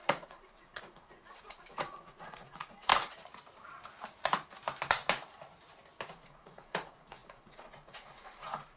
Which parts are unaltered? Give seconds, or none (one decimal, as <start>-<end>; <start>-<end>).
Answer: 2.9-6.1